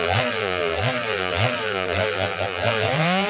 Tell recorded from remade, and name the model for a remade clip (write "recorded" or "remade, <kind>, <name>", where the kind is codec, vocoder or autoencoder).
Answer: remade, vocoder, BigVGAN v2